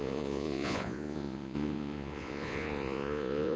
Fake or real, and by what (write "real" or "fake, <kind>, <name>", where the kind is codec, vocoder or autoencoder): fake, vocoder, Vocos